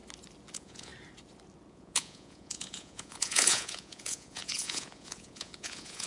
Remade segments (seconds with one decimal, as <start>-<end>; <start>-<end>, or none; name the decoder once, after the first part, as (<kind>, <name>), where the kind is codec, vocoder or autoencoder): 0.5-0.9 (vocoder, Vocos); 1.7-6.1